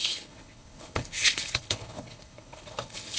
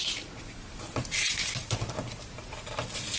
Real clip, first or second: second